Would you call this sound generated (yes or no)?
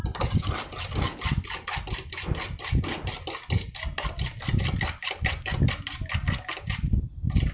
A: no